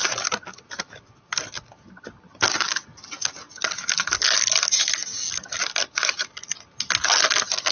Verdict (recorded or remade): recorded